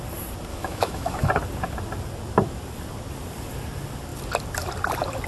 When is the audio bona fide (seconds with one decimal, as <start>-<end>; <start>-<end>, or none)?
0.0-0.5; 1.3-5.3